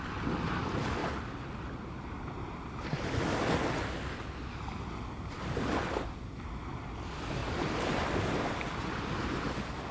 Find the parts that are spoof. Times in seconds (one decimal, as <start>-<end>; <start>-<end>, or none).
none